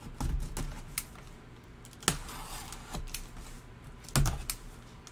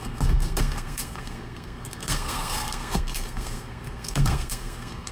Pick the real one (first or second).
first